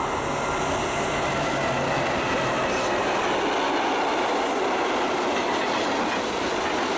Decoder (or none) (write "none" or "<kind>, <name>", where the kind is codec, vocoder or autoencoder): none